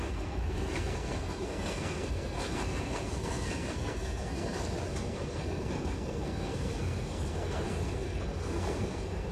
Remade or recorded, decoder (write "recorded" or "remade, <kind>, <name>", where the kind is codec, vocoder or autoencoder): remade, codec, SNAC